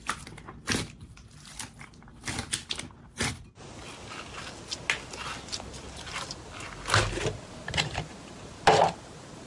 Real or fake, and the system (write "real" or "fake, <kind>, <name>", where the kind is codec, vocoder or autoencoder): real